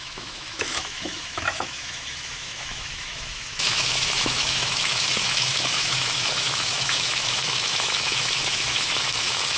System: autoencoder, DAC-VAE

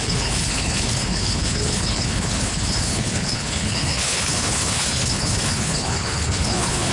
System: codec, HILCodec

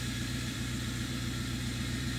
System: vocoder, BigVGAN v2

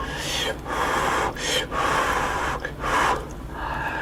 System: none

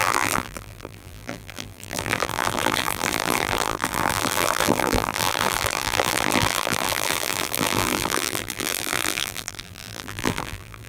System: vocoder, BigVGAN v2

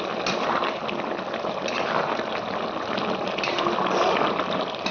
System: none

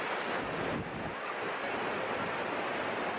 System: none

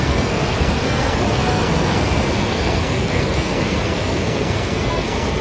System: codec, SNAC